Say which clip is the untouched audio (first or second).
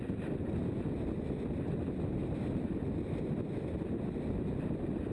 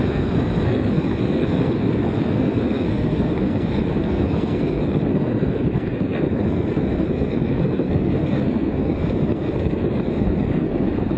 first